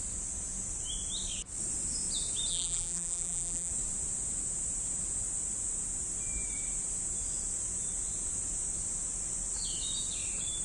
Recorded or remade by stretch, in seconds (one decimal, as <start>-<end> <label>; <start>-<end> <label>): 0.0-2.5 recorded; 2.5-3.7 remade; 3.7-10.6 recorded